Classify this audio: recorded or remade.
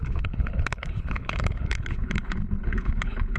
remade